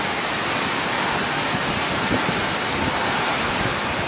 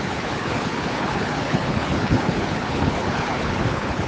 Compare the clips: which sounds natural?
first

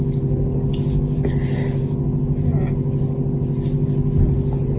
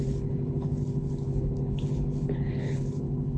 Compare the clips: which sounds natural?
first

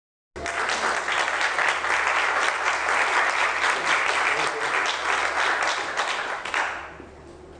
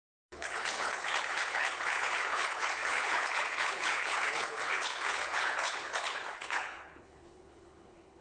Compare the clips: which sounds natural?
first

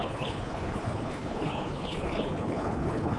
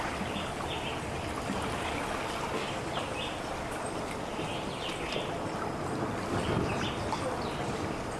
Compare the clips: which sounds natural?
second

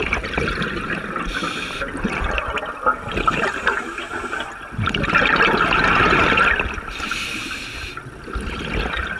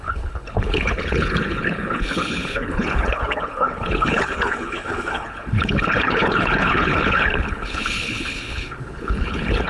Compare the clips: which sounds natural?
first